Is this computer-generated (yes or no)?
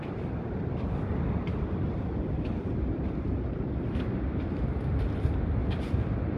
no